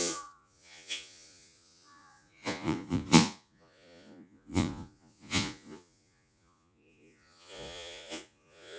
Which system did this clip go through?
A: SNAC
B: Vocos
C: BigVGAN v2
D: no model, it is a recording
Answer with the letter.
B